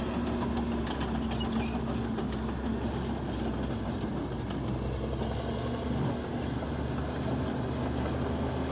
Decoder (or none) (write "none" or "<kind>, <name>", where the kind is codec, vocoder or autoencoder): none